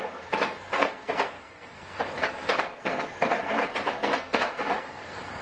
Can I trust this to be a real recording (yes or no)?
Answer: no